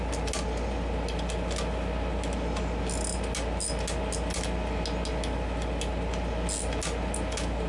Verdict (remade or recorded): recorded